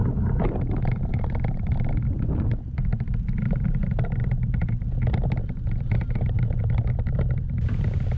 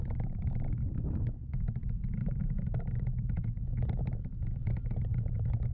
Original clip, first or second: first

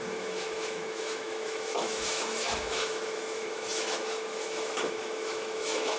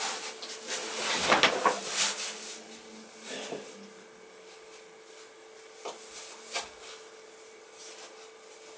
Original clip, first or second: second